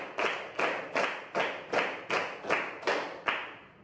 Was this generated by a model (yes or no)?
no